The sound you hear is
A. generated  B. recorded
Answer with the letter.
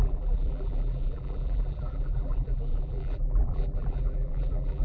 A